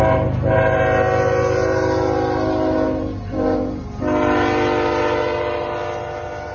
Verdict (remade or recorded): recorded